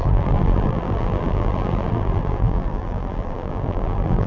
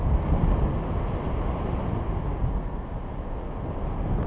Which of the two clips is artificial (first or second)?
first